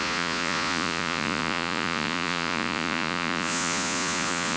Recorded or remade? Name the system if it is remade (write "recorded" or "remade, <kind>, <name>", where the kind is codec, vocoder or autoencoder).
remade, vocoder, Vocos